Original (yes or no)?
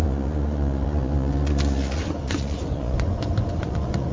no